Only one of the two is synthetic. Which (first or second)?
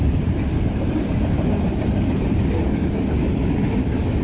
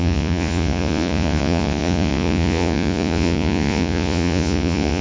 second